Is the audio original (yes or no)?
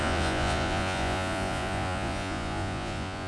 no